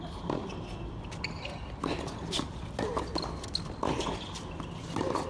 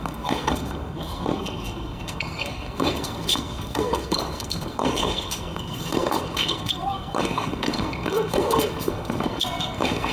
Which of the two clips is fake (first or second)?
second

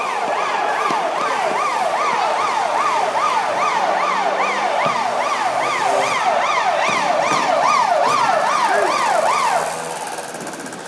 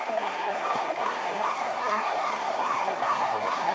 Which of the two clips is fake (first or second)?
second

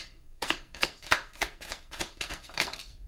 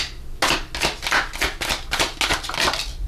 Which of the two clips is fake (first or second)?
first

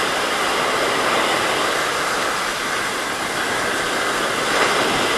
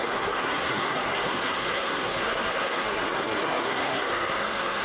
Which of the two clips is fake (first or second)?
second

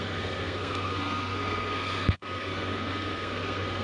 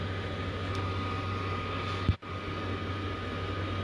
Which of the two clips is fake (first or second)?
first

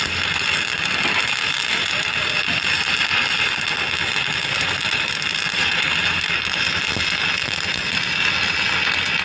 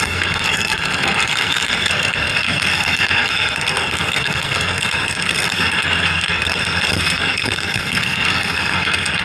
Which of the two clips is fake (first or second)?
second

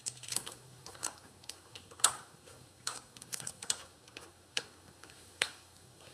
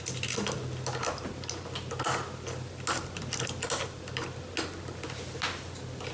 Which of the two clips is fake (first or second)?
first